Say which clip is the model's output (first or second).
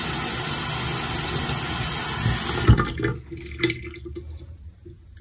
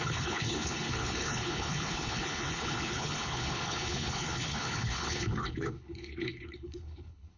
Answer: second